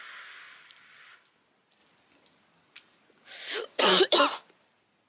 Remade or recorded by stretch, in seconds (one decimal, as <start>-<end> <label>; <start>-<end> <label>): 0.0-5.1 recorded